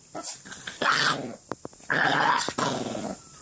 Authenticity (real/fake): real